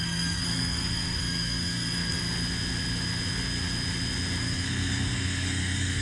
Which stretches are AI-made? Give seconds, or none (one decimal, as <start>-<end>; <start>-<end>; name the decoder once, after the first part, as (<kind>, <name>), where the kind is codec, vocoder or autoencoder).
0.0-2.2 (codec, SNAC); 4.4-6.0